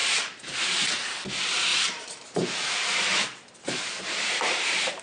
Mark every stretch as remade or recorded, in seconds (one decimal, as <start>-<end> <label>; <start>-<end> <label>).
0.0-0.6 remade; 0.6-1.7 recorded; 1.7-5.0 remade